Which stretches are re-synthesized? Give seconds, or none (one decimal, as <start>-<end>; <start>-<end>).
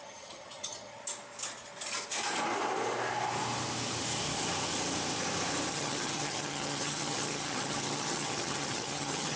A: 0.0-1.0; 5.7-9.4